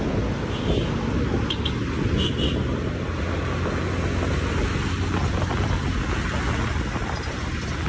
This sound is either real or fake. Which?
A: real